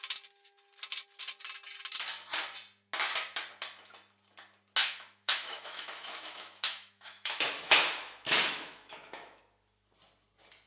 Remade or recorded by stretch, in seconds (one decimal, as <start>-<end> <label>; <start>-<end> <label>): 0.0-4.8 recorded; 4.8-9.4 remade; 9.4-10.7 recorded

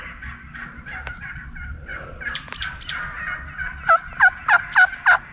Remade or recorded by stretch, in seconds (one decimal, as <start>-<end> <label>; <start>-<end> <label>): 0.0-5.3 recorded

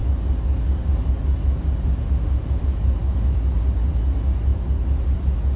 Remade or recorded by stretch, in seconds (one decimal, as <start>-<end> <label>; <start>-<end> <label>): 0.0-2.0 recorded; 2.0-2.6 remade; 2.6-5.6 recorded

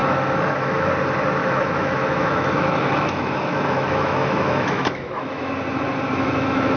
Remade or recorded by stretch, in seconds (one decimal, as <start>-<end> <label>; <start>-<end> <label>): 0.0-0.9 remade; 0.9-1.4 recorded; 1.4-5.5 remade; 5.5-6.1 recorded; 6.1-6.8 remade

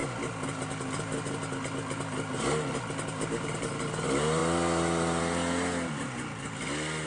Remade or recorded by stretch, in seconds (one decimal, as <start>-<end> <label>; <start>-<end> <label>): 0.0-7.1 recorded

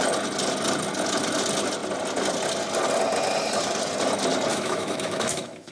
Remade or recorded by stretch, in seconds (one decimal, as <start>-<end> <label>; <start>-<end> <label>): 0.0-4.5 recorded; 4.5-5.7 remade

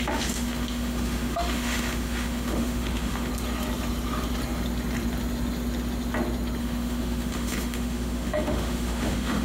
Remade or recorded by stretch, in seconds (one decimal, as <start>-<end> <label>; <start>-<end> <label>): 0.0-3.3 remade; 3.3-6.6 recorded; 6.6-9.4 remade